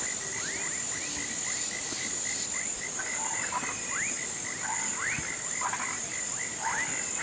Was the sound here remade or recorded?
recorded